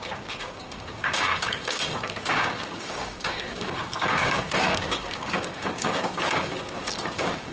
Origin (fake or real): fake